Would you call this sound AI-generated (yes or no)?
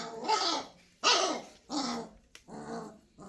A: no